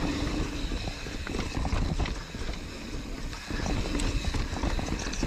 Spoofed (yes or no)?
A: no